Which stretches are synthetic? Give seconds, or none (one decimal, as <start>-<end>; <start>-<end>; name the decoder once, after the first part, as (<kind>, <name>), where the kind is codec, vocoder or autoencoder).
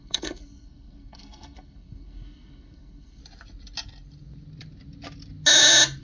0.0-3.2 (codec, SNAC)